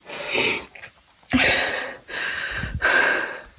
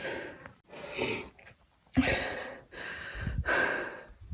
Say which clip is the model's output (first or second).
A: first